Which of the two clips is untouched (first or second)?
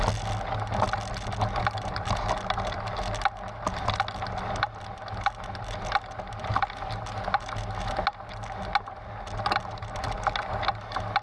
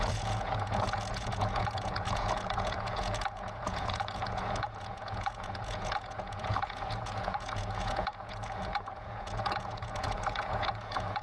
first